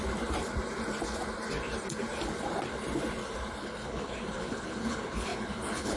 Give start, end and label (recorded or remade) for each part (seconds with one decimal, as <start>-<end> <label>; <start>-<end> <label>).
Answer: 0.0-3.6 recorded; 3.6-6.0 remade